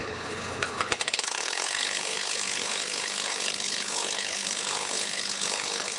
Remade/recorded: remade